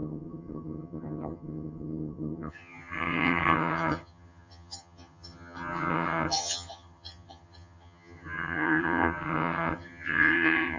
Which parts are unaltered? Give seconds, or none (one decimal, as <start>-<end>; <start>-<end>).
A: none